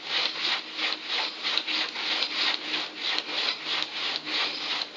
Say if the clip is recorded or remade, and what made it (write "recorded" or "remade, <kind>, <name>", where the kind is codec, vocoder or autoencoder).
recorded